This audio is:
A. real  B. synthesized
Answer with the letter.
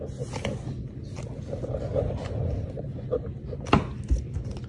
A